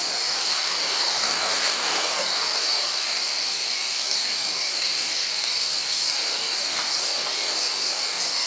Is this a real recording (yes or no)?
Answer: no